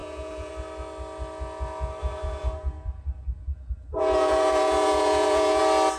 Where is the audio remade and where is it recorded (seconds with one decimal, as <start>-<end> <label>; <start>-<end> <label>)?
0.0-0.5 remade; 0.5-2.0 recorded; 2.0-5.6 remade; 5.6-6.0 recorded